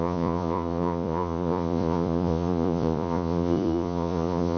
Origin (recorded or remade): remade